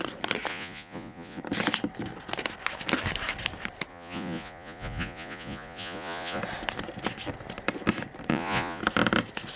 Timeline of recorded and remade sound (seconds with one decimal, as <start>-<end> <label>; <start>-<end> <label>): 0.0-0.5 recorded; 0.5-1.4 remade; 1.4-3.9 recorded; 3.9-6.4 remade; 6.4-8.3 recorded; 8.3-8.8 remade; 8.8-9.6 recorded